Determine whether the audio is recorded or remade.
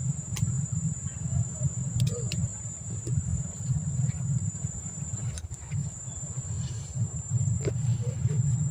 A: remade